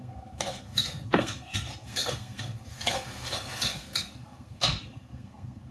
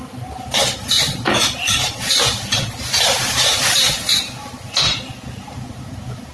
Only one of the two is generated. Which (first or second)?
first